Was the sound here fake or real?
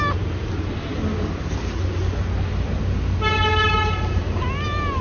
real